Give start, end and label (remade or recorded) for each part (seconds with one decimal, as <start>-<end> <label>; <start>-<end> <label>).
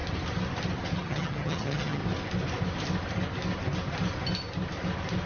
0.0-1.0 recorded; 1.0-2.0 remade; 2.0-5.3 recorded